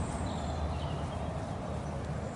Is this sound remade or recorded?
recorded